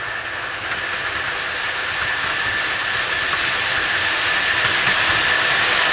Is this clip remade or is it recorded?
recorded